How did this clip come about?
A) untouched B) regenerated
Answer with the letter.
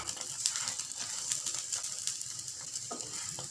A